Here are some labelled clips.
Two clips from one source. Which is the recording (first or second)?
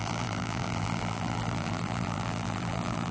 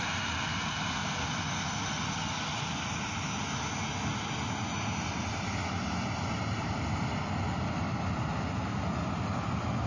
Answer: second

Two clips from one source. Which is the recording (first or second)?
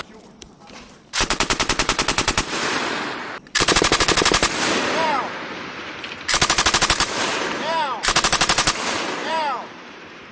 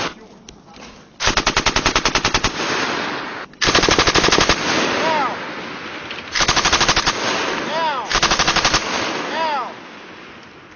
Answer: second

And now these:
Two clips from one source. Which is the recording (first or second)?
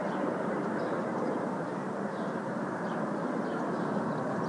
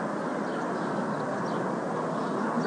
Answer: second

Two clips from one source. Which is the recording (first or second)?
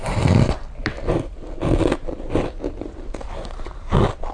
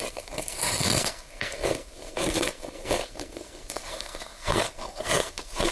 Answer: first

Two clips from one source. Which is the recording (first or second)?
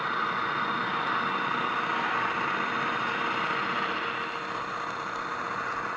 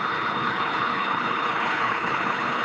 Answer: first